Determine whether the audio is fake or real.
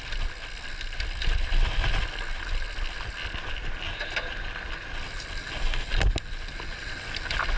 real